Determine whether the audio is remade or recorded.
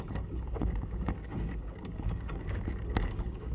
remade